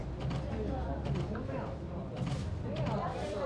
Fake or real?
real